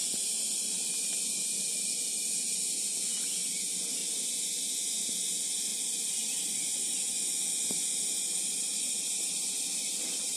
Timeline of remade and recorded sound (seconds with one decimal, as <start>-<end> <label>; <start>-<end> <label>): 0.0-2.2 remade; 2.2-4.0 recorded; 4.0-4.6 remade; 4.6-5.7 recorded; 5.7-10.4 remade